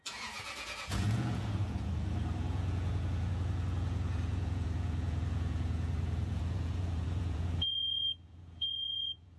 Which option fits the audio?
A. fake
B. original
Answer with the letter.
A